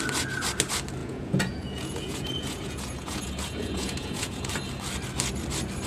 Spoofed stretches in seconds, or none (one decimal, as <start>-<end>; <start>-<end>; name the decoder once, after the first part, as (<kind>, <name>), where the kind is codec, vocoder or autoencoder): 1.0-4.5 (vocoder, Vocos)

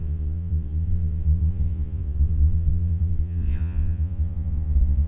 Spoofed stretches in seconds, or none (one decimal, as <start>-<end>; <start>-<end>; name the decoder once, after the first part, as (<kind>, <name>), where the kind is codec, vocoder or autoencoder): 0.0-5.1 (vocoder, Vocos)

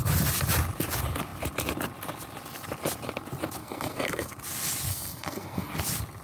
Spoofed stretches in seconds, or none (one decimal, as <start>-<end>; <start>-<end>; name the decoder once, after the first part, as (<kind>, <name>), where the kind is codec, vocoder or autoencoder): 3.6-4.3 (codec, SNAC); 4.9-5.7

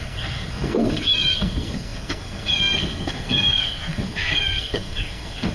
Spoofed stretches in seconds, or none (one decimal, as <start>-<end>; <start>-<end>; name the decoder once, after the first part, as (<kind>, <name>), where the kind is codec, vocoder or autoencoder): 0.0-5.5 (codec, SNAC)

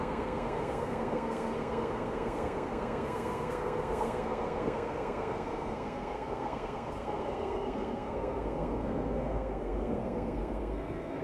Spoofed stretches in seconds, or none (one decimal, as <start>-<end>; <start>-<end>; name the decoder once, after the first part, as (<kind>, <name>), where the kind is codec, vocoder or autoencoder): 0.0-11.2 (codec, SNAC)